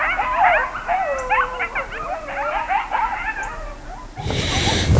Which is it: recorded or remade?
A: recorded